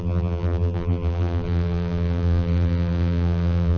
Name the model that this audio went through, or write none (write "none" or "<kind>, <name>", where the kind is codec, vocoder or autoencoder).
vocoder, BigVGAN v2